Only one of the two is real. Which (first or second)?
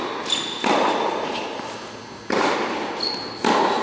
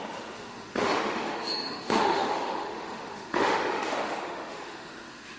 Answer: first